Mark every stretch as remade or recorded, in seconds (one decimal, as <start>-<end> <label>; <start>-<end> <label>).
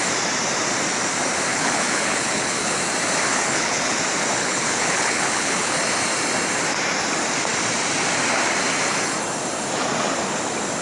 0.0-1.5 recorded; 1.5-2.8 remade; 2.8-3.3 recorded; 3.3-4.0 remade; 4.0-4.4 recorded; 4.4-5.8 remade; 5.8-10.8 recorded